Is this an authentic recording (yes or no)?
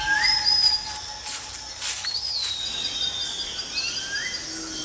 yes